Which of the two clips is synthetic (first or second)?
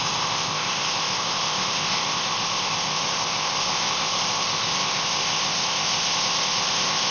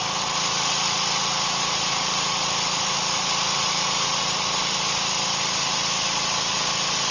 first